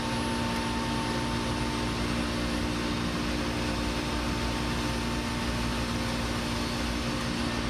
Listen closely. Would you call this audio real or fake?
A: real